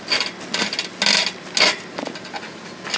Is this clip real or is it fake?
real